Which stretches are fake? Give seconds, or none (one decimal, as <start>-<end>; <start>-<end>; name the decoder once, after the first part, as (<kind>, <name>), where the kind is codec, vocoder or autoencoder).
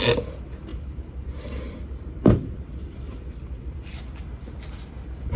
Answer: 0.7-3.9 (vocoder, BigVGAN v2)